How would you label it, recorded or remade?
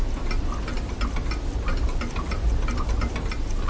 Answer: recorded